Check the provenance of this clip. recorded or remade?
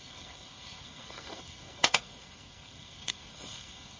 remade